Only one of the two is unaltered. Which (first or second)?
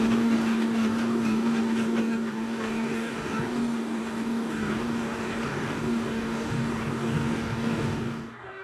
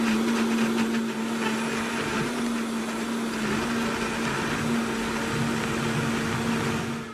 second